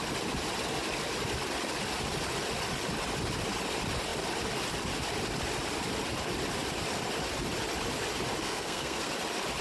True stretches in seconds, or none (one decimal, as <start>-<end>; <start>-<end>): 0.0-8.4; 9.1-9.6